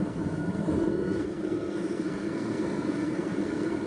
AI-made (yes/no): yes